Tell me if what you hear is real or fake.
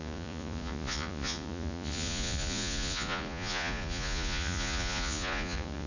fake